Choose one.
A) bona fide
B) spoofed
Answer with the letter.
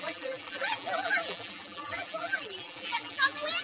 B